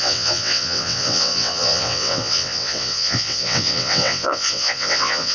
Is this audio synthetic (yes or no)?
yes